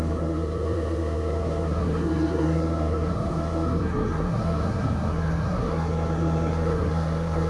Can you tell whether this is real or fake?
fake